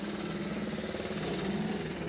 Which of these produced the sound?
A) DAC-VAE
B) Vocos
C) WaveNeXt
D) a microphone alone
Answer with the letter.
D